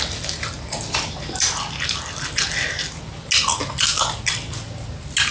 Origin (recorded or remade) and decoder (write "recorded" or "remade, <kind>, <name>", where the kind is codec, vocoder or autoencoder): recorded